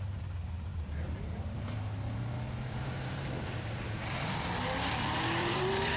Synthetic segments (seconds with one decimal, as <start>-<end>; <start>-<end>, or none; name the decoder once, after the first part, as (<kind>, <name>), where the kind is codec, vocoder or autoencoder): 0.7-4.3 (vocoder, BigVGAN v2); 5.4-6.0